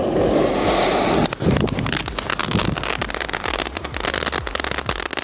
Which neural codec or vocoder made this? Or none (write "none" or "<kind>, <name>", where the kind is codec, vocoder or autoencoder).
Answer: none